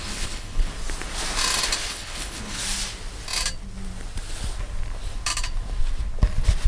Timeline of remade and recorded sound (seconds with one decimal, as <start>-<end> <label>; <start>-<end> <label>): 0.0-0.7 remade; 0.7-1.9 recorded; 1.9-2.6 remade; 2.6-6.7 recorded